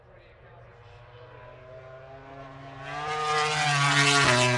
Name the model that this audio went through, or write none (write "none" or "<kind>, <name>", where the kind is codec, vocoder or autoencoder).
none